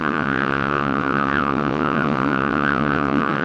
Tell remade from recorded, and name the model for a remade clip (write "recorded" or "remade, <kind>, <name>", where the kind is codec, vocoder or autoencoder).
remade, vocoder, WaveNeXt